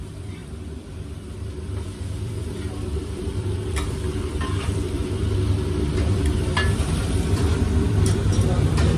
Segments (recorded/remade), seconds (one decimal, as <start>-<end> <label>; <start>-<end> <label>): 0.0-5.2 remade; 5.2-5.8 recorded; 5.8-9.0 remade